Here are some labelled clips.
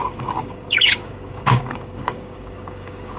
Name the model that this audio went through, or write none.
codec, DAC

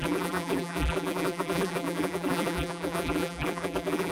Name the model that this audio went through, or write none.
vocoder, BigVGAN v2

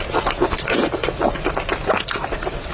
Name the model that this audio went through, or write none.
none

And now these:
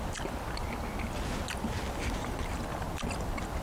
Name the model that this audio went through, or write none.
none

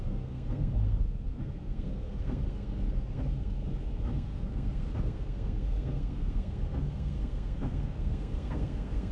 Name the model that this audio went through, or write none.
codec, SNAC